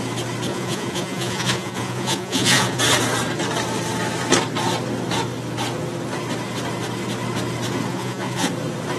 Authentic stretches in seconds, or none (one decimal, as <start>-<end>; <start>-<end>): 0.0-0.5; 2.8-7.9; 8.5-9.0